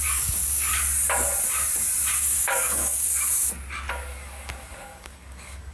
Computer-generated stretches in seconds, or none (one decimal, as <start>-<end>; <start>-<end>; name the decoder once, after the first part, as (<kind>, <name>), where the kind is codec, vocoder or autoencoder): 0.0-0.7 (codec, DAC); 2.1-3.1; 3.9-5.7